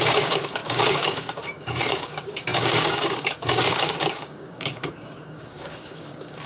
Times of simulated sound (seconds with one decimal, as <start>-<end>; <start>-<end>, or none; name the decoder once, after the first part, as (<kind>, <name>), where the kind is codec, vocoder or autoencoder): 0.0-6.5 (codec, DAC)